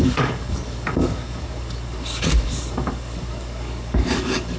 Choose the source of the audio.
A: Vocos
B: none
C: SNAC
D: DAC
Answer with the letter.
D